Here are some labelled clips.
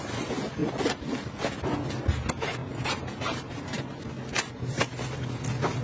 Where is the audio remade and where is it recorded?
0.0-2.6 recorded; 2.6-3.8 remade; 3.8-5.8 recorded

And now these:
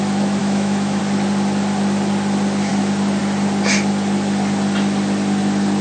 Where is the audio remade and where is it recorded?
0.0-0.4 recorded; 0.4-1.0 remade; 1.0-5.8 recorded

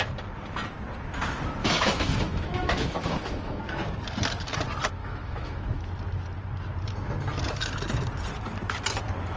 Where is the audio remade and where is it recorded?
0.0-1.6 recorded; 1.6-3.6 remade; 3.6-5.0 recorded; 5.0-5.8 remade; 5.8-9.4 recorded